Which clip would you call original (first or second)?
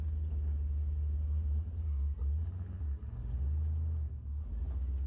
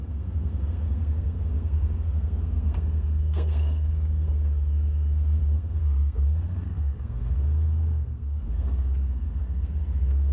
first